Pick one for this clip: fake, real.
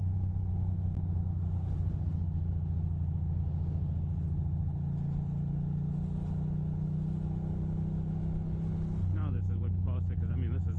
real